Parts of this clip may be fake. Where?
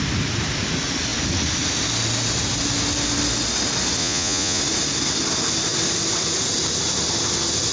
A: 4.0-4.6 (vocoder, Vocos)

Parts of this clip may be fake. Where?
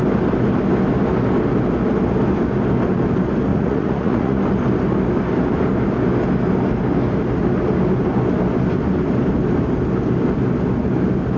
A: 3.5-4.4 (vocoder, Vocos)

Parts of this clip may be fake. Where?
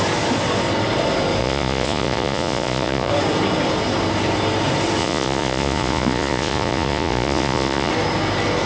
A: 1.4-3.1 (vocoder, Vocos); 5.0-7.9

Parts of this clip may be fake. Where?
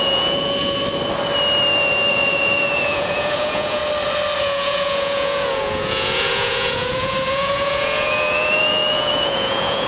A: 0.0-0.8 (vocoder, Vocos); 2.1-3.8; 4.4-9.9